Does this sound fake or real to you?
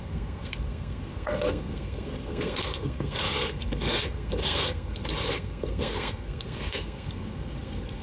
fake